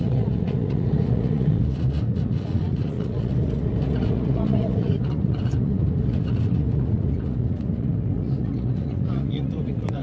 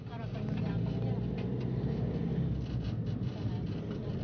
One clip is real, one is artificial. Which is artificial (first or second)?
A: first